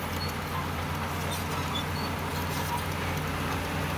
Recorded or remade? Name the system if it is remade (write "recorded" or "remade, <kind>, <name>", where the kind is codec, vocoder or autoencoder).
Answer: recorded